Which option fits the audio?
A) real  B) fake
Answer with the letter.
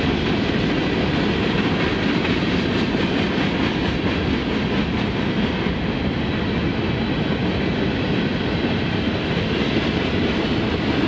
A